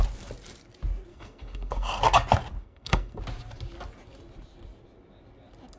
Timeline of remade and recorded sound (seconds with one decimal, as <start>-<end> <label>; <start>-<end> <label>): 0.0-1.1 recorded; 1.1-2.0 remade; 2.0-2.6 recorded; 2.6-3.2 remade; 3.2-5.8 recorded

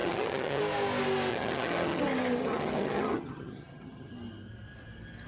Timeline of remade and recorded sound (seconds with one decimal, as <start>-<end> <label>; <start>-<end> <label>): 0.0-0.6 remade; 0.6-1.3 recorded; 1.3-2.0 remade; 2.0-2.4 recorded; 2.4-4.1 remade; 4.1-5.3 recorded

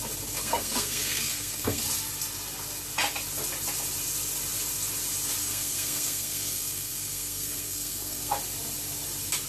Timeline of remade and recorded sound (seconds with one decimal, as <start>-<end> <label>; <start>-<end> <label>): 0.0-0.4 recorded; 0.4-1.8 remade; 1.8-5.4 recorded; 5.4-8.3 remade; 8.3-9.5 recorded

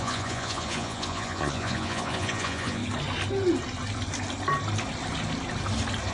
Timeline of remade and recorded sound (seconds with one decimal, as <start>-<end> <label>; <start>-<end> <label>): 0.0-2.8 remade; 2.8-6.1 recorded

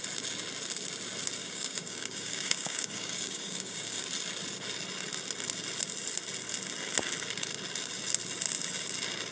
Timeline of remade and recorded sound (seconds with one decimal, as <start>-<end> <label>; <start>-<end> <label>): 0.0-1.4 recorded; 1.4-4.0 remade; 4.0-9.3 recorded

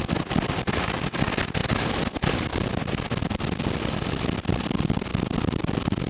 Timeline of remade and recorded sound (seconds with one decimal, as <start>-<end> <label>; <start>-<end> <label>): 0.0-6.1 recorded